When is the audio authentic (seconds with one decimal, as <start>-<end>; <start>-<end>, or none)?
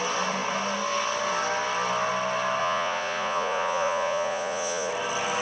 0.0-2.6; 4.9-5.4